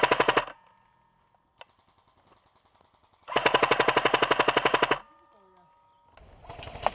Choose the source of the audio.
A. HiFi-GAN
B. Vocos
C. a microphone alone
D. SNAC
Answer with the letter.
C